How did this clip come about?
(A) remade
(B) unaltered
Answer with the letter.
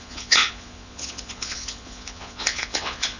A